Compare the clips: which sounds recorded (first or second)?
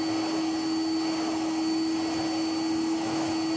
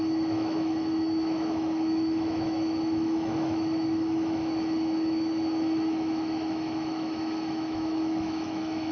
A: first